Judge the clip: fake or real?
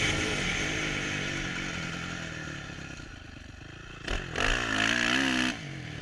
real